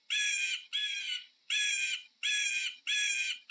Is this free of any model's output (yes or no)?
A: yes